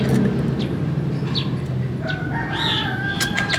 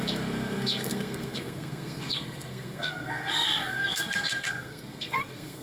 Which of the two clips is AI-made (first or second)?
second